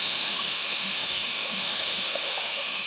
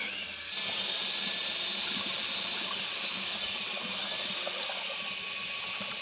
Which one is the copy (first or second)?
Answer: first